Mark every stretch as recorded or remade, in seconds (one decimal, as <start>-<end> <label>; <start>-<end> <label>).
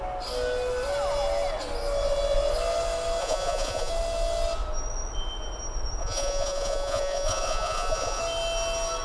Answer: 0.0-3.2 recorded; 3.2-3.9 remade; 3.9-6.0 recorded; 6.0-8.2 remade; 8.2-9.0 recorded